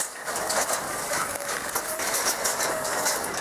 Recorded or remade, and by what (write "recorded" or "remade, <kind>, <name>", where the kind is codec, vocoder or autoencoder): remade, codec, DAC